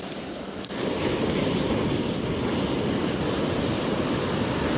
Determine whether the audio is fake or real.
real